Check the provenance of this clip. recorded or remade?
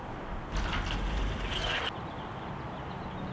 recorded